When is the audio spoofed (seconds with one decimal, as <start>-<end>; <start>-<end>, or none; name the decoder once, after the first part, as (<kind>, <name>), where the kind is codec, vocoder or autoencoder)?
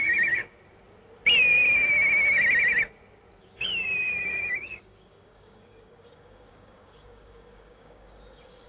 0.0-0.4 (codec, DAC); 3.4-8.7